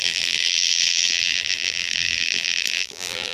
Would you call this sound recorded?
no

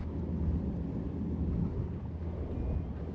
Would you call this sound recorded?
yes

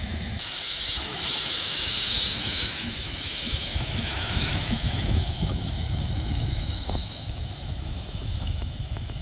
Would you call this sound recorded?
no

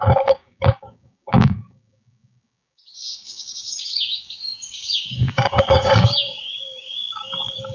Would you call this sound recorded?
no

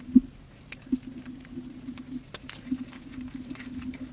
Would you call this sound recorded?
yes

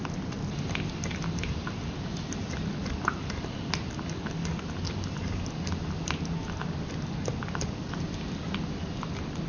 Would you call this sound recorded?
yes